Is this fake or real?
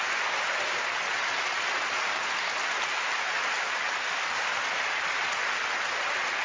real